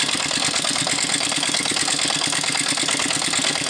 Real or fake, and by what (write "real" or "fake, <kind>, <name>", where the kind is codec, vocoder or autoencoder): fake, codec, SNAC